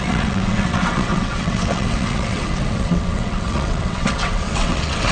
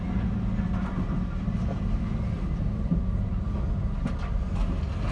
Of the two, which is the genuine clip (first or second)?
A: second